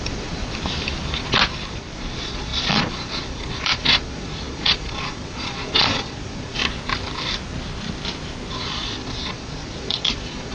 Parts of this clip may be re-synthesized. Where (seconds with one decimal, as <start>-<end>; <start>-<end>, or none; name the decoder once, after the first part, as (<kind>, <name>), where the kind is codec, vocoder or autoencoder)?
0.0-0.4 (vocoder, Vocos); 1.7-6.6; 8.5-10.5